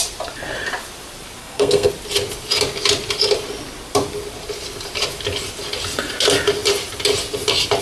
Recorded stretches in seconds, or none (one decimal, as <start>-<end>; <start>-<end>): 0.0-1.4; 1.9-7.8